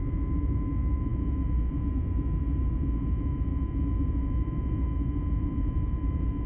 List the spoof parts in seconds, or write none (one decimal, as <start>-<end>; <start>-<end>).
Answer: 0.0-6.5